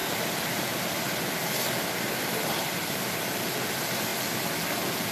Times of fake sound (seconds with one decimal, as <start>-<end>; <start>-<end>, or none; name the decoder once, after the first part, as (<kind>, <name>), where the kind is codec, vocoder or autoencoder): none